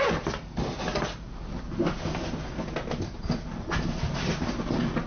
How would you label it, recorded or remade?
recorded